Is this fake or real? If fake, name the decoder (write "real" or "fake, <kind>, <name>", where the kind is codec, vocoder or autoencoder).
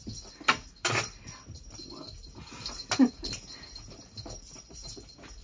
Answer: real